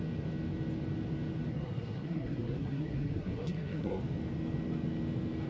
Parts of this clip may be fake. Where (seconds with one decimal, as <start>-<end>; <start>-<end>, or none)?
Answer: 1.5-4.0